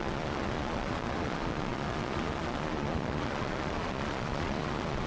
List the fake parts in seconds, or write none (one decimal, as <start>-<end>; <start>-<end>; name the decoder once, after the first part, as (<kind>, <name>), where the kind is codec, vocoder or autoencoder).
0.0-5.1 (vocoder, Vocos)